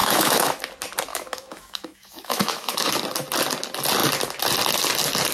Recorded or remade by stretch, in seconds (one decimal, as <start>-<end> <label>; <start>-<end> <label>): 0.0-0.6 remade; 0.6-1.1 recorded; 1.1-2.9 remade; 2.9-5.3 recorded